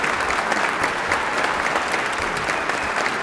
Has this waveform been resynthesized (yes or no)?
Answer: no